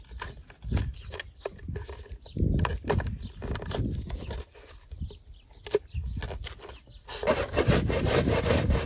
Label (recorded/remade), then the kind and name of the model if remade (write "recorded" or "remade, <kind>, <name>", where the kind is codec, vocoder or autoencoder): recorded